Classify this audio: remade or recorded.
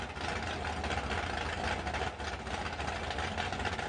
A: recorded